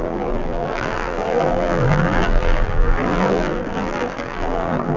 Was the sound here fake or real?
fake